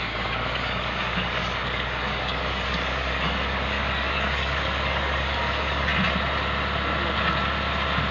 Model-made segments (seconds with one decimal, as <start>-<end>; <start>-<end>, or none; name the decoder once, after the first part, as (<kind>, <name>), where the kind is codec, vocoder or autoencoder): 0.0-5.9 (codec, DAC)